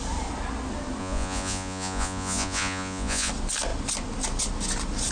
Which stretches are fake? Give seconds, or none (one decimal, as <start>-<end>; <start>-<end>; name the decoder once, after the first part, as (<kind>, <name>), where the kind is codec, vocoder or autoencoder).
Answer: 1.0-3.3 (vocoder, Vocos)